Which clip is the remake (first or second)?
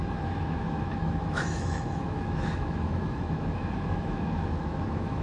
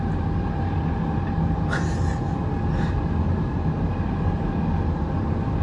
first